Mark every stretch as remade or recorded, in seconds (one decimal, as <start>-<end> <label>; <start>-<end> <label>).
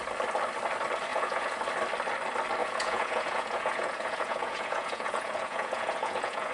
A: 0.0-1.1 recorded; 1.1-1.6 remade; 1.6-2.6 recorded; 2.6-6.5 remade